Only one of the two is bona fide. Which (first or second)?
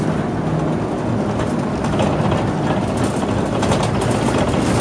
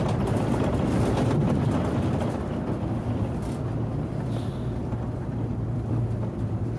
first